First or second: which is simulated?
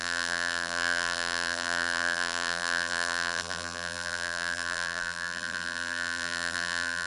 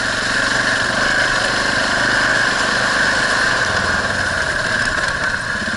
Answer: first